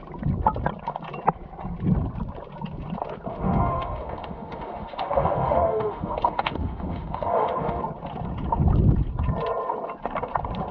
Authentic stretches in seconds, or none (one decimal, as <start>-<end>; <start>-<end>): 0.0-3.3; 7.8-10.7